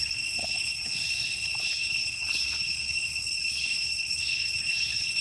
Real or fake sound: fake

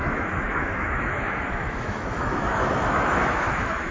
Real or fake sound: fake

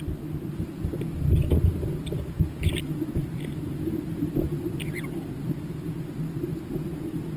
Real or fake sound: real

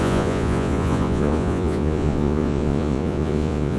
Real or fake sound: fake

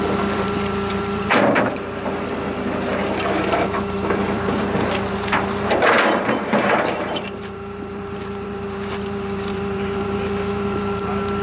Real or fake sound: fake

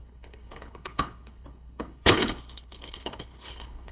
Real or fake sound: fake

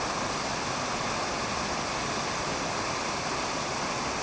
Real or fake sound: real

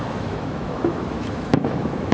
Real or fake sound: fake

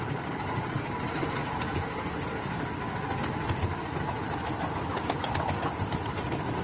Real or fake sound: real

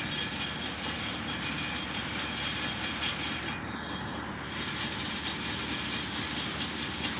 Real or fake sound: real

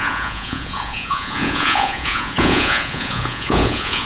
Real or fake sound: fake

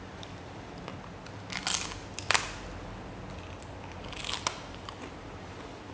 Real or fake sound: real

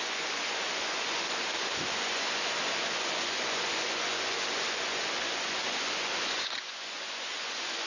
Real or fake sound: fake